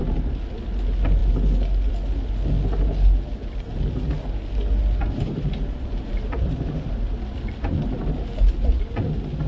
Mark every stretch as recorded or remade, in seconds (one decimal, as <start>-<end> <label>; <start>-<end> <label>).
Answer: 0.0-5.0 recorded; 5.0-6.3 remade; 6.3-9.5 recorded